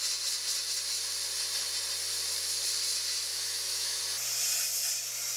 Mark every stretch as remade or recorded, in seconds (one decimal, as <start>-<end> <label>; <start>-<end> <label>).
0.0-3.3 recorded; 3.3-4.0 remade; 4.0-5.4 recorded